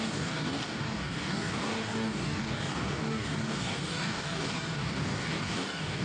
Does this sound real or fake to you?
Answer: fake